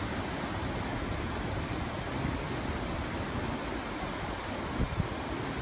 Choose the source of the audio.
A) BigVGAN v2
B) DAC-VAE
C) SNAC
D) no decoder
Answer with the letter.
D